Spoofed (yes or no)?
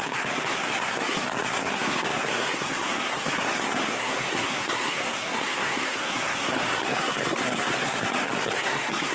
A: yes